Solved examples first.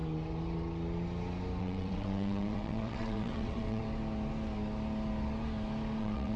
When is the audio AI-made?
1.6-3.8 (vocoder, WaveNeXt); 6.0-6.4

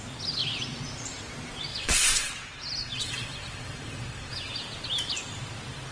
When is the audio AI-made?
1.7-2.3 (vocoder, WaveNeXt); 2.8-4.5

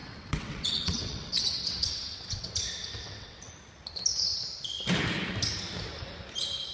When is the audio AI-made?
0.0-2.5 (vocoder, WaveNeXt); 3.0-3.5

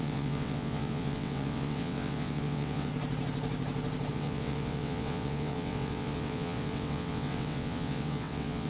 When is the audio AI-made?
0.0-2.9 (vocoder, WaveNeXt); 4.1-8.7

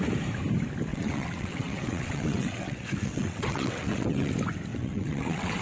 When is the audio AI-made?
0.9-4.3 (vocoder, WaveNeXt); 4.7-5.6